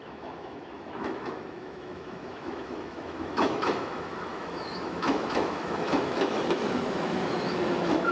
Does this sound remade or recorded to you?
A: remade